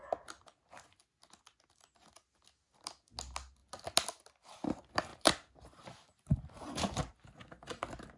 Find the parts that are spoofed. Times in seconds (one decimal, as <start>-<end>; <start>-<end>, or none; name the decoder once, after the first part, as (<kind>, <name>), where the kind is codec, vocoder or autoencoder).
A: 5.1-5.8 (vocoder, BigVGAN v2); 6.3-7.1